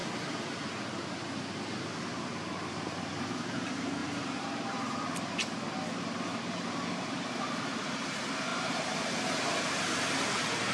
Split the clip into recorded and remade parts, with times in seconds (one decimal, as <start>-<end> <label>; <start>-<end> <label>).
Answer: 0.0-4.0 recorded; 4.0-5.0 remade; 5.0-8.5 recorded; 8.5-9.1 remade; 9.1-10.7 recorded